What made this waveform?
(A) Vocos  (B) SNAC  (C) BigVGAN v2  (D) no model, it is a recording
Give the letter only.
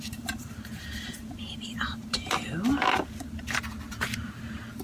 C